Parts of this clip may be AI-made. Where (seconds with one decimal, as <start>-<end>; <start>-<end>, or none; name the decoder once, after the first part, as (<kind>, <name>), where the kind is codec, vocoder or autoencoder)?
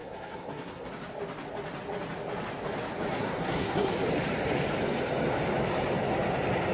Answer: 0.0-0.9 (codec, SNAC); 3.1-3.9